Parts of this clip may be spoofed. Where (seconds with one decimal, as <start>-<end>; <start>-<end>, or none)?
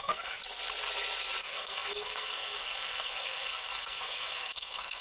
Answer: 0.0-0.4; 1.4-5.0